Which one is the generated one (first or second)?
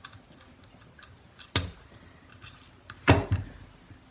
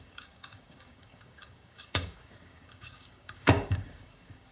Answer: second